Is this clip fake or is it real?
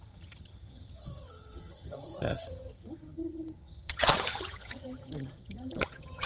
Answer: fake